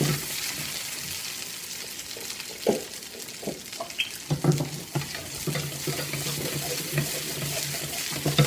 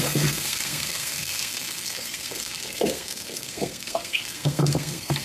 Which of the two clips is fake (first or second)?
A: second